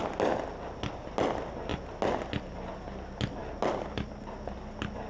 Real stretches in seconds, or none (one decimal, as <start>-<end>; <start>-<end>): 0.0-5.1